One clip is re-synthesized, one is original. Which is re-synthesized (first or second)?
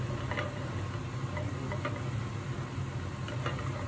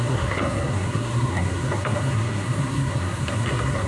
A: second